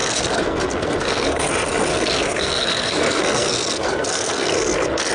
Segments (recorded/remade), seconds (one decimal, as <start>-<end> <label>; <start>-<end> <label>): 0.0-1.5 remade; 1.5-1.9 recorded; 1.9-5.1 remade